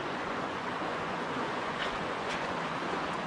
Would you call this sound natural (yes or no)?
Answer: no